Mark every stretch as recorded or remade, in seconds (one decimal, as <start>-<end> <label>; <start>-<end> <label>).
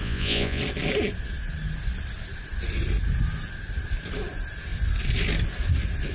0.0-0.6 remade; 0.6-6.1 recorded